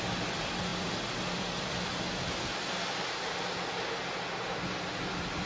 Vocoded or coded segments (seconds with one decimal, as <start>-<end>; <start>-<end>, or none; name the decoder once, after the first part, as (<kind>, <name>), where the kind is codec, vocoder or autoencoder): none